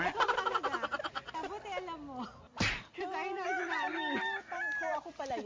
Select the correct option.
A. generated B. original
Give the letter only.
B